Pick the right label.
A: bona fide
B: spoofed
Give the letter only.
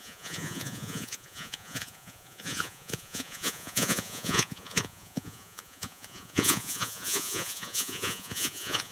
B